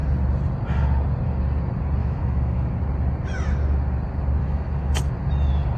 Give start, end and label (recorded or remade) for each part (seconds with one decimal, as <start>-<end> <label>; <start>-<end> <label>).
0.0-2.0 recorded; 2.0-2.7 remade; 2.7-4.4 recorded; 4.4-5.1 remade; 5.1-5.8 recorded